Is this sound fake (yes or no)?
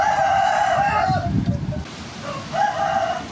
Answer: no